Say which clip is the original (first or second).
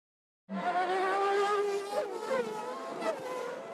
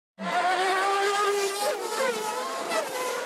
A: first